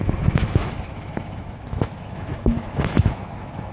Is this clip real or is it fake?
fake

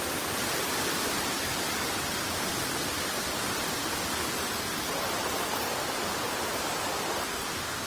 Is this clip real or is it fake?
real